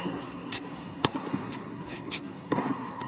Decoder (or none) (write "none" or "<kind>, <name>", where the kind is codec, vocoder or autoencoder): codec, SNAC